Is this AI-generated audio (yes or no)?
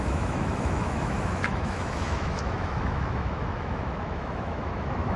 yes